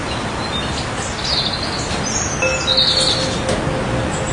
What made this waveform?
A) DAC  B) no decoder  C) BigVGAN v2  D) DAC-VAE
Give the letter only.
B